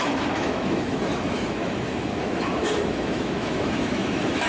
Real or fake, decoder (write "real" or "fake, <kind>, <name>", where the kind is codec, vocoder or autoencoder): fake, autoencoder, DAC-VAE